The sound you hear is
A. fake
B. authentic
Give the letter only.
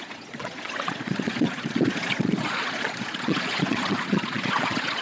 A